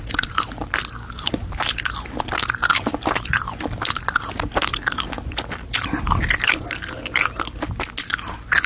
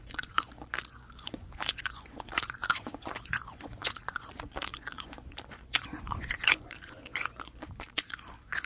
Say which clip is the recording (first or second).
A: first